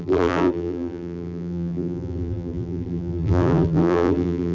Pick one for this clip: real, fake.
fake